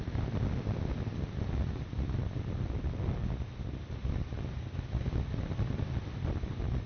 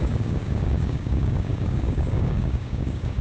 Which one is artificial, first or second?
second